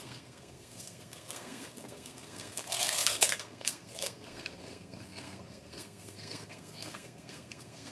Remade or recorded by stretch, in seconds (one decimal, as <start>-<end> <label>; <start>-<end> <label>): 0.0-7.9 remade